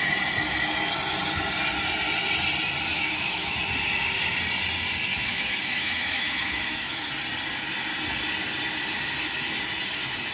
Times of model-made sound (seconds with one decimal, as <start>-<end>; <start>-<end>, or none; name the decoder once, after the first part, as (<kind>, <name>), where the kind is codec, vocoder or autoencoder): 2.9-3.6 (autoencoder, DAC-VAE); 5.1-7.1